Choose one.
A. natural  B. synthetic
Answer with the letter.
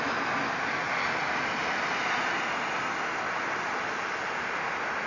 A